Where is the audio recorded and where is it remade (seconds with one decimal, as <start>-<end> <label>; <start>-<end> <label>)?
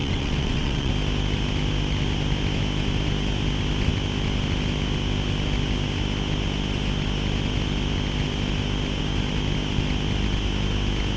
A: 0.0-0.9 remade; 0.9-11.2 recorded